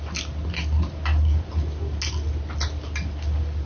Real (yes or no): yes